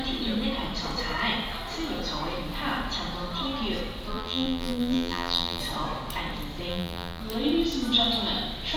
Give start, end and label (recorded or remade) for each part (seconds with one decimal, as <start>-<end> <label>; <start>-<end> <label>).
0.0-4.1 recorded; 4.1-5.6 remade; 5.6-6.7 recorded; 6.7-7.2 remade; 7.2-8.8 recorded